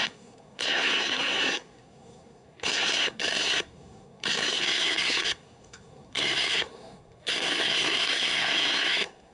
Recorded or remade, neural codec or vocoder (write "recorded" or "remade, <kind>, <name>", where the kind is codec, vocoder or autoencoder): remade, codec, SNAC